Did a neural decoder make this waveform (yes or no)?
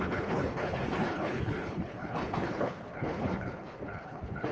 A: yes